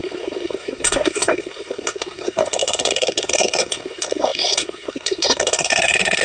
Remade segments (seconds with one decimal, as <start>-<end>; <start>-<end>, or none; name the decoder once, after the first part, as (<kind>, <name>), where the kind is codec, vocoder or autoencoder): 0.0-6.2 (codec, SNAC)